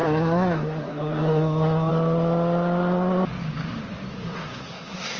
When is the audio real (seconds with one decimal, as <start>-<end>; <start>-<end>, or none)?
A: 1.9-4.1